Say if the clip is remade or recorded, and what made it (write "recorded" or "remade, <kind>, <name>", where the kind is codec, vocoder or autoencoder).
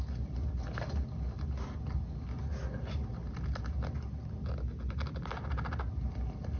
recorded